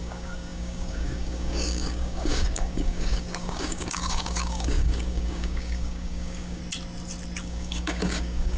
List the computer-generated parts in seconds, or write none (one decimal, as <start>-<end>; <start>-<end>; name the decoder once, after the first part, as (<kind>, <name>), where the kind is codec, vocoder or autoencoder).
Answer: 0.0-6.6 (codec, DAC); 7.4-8.6